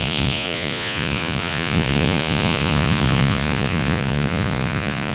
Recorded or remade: remade